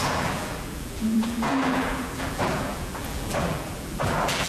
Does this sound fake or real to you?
fake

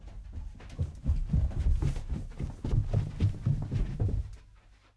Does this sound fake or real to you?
real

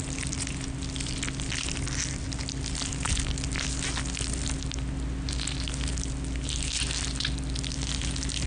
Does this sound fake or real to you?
real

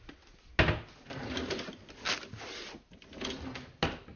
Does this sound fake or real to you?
real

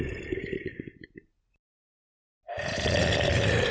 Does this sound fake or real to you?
real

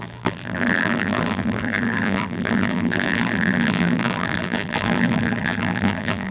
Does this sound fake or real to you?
fake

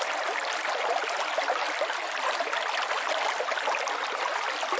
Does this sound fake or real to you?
real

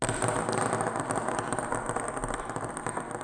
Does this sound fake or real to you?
real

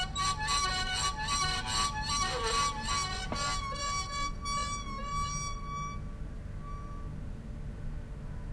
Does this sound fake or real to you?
real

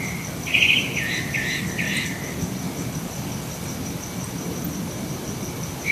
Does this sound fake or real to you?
real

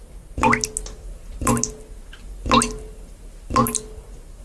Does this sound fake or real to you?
real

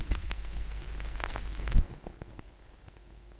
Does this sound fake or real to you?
fake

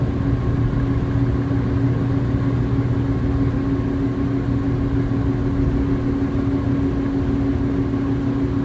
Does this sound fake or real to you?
real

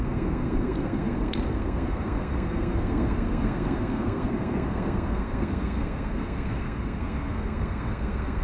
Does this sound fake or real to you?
fake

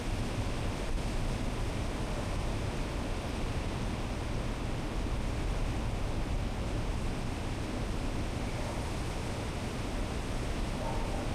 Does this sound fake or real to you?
real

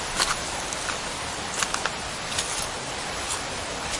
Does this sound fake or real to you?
fake